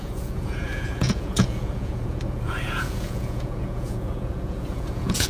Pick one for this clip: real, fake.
fake